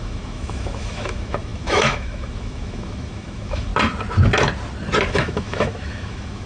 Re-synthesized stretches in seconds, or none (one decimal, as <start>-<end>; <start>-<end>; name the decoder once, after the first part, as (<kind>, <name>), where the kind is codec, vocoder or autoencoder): 0.0-3.7 (autoencoder, DAC-VAE); 5.1-6.5

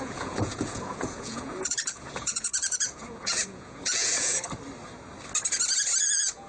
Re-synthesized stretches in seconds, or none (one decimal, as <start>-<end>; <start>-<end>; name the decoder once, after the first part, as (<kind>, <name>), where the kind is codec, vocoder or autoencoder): 0.0-4.3 (vocoder, Vocos); 6.0-6.5

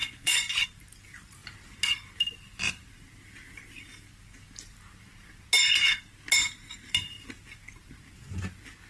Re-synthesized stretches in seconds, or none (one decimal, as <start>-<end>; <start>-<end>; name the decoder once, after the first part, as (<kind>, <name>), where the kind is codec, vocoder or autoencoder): 0.0-0.5 (vocoder, Vocos)

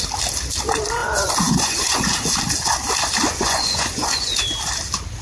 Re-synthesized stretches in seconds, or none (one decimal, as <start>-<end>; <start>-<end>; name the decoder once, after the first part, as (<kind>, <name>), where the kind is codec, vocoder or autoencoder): 1.0-2.0 (vocoder, Vocos); 3.3-4.4

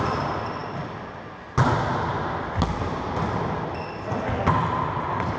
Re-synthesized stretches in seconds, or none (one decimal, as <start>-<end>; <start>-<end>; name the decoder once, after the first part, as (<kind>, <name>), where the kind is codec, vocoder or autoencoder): none

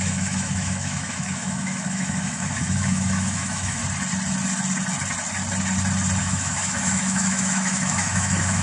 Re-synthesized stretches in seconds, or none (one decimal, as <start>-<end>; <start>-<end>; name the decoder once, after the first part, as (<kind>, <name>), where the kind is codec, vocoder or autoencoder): 0.0-3.8 (autoencoder, DAC-VAE); 6.2-8.6

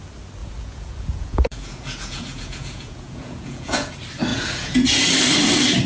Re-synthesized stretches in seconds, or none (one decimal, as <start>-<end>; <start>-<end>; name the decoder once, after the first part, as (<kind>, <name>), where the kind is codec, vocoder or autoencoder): 0.4-3.9 (vocoder, Vocos); 4.3-5.0

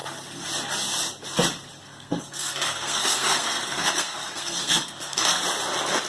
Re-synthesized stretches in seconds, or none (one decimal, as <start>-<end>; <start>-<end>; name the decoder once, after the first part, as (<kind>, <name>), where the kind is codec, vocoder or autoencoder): 1.8-5.4 (codec, SNAC)